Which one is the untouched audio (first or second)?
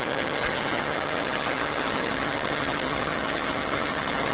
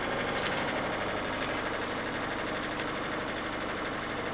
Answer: second